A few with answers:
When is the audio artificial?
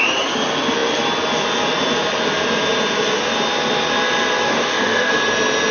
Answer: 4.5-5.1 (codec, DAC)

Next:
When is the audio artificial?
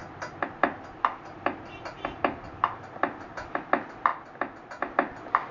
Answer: none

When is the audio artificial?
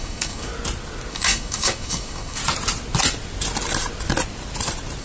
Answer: 0.0-0.5 (codec, DAC); 1.1-2.4